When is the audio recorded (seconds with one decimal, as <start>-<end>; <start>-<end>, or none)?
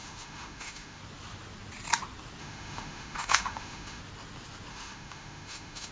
1.0-2.4; 4.0-4.7